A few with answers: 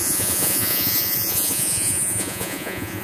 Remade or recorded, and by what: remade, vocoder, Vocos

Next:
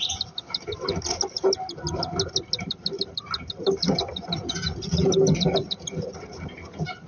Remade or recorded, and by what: recorded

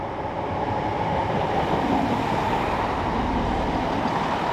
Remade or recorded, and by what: recorded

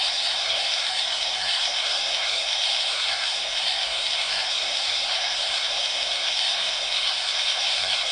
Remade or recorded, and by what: remade, codec, SNAC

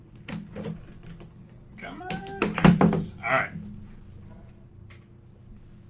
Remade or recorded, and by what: remade, vocoder, BigVGAN v2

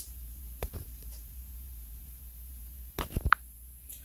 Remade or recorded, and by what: remade, vocoder, BigVGAN v2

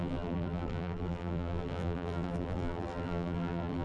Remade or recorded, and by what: remade, vocoder, BigVGAN v2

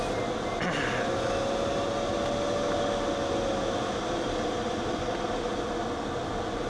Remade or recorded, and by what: recorded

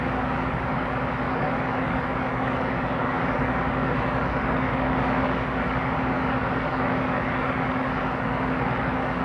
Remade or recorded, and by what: remade, codec, DAC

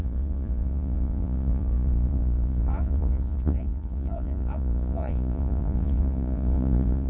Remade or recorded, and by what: remade, vocoder, Vocos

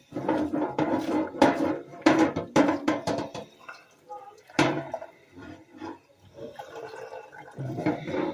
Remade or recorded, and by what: remade, vocoder, BigVGAN v2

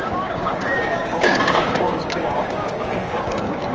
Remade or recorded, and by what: remade, codec, DAC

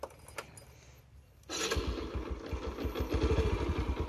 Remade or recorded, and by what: recorded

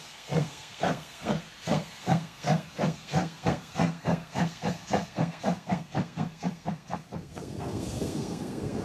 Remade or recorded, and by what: remade, codec, SNAC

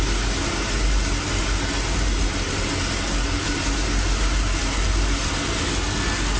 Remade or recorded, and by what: recorded